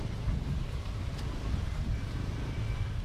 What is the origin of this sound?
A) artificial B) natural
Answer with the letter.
B